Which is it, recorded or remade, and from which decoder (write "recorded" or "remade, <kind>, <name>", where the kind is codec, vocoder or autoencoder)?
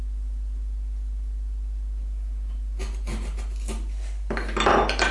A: recorded